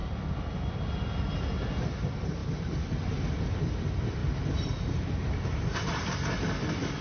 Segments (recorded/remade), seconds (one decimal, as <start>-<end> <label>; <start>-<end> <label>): 0.0-4.2 recorded; 4.2-6.1 remade; 6.1-7.0 recorded